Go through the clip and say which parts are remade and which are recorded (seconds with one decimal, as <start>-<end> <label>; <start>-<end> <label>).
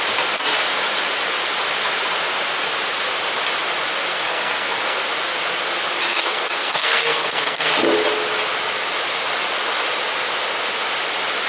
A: 0.0-4.1 recorded; 4.1-5.0 remade; 5.0-6.1 recorded; 6.1-7.7 remade; 7.7-11.5 recorded